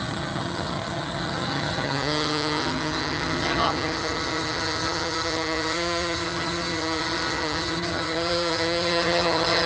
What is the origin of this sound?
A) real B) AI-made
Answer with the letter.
B